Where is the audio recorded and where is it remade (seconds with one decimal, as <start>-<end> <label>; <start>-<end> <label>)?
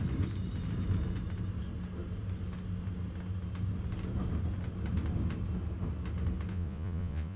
0.0-6.5 recorded; 6.5-7.4 remade